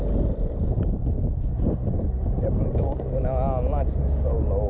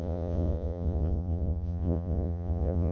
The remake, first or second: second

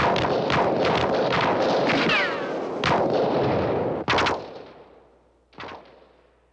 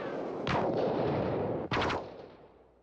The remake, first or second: second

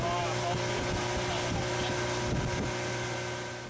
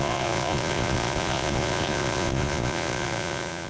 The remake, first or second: second